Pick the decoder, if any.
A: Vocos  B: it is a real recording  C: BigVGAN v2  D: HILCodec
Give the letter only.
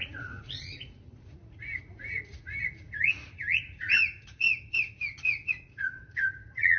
A